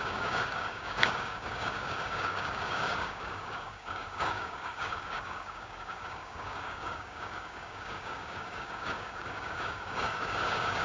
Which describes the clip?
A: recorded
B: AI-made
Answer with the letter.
B